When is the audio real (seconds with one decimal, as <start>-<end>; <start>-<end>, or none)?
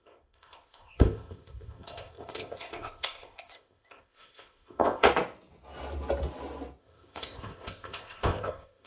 5.1-6.8